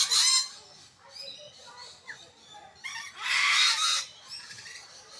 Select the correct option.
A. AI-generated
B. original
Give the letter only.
B